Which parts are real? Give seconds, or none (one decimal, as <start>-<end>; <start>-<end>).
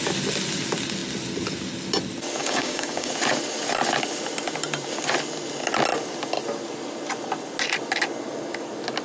0.0-2.4; 3.1-9.0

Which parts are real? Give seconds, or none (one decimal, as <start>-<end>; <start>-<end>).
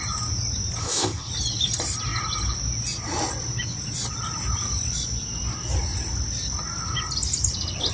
0.0-0.8; 1.3-7.9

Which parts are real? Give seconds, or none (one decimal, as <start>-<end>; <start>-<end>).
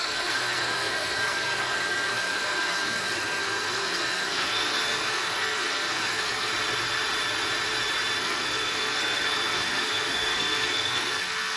6.5-8.2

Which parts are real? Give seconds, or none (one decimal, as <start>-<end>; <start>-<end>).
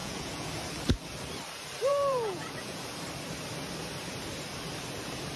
0.5-1.9; 2.8-5.4